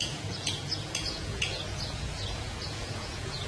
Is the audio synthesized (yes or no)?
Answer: yes